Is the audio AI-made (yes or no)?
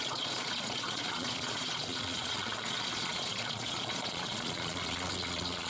yes